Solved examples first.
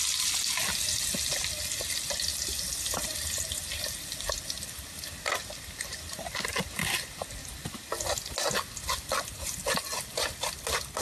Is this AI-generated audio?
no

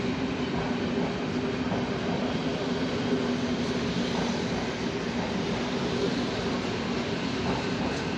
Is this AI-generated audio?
no